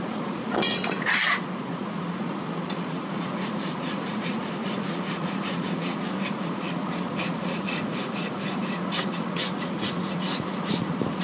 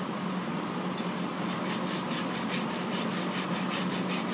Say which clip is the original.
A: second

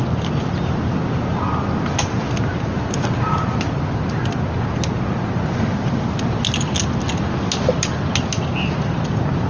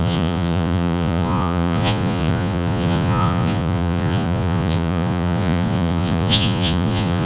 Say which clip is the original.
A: first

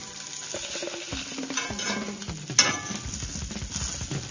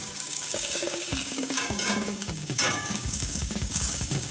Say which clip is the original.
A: first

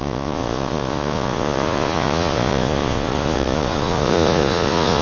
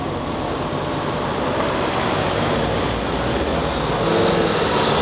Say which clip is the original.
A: second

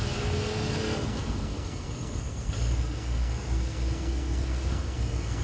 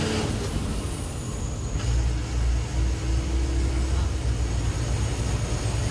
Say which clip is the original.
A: second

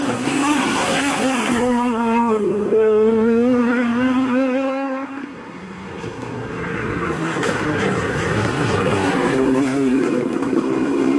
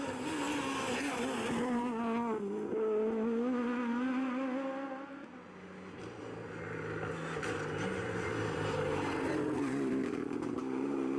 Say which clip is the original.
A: second